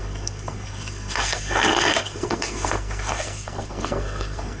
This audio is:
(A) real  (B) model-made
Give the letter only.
B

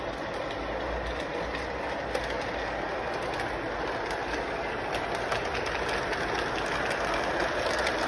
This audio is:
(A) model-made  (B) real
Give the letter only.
B